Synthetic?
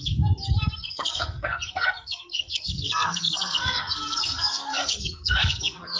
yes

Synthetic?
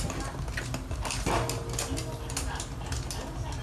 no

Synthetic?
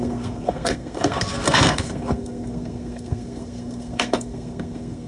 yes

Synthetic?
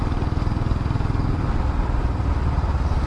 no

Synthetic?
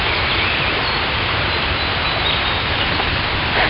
no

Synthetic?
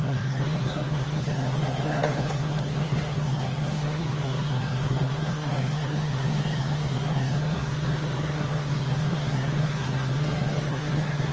yes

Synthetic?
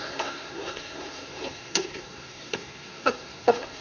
yes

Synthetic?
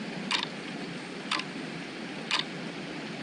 no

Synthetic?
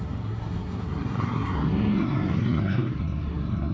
yes